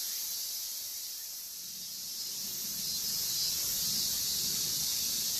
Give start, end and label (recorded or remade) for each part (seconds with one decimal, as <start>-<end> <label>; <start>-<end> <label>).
0.0-5.4 recorded